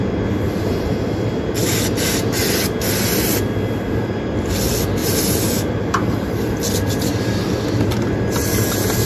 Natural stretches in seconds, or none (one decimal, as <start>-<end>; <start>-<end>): 0.0-1.6; 2.4-5.0; 5.7-9.1